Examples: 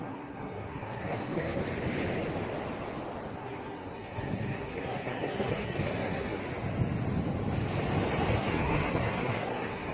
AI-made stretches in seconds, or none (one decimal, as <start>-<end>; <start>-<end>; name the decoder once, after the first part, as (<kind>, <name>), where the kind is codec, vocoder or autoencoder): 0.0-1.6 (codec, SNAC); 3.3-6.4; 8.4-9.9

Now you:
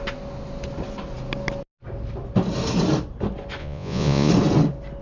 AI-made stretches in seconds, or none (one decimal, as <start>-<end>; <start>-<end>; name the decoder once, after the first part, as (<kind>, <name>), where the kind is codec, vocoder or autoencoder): 3.6-4.3 (vocoder, Vocos)

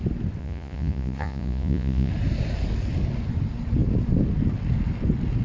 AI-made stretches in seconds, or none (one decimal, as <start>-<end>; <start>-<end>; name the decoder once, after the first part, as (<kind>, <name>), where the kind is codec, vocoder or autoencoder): 0.4-2.1 (vocoder, Vocos)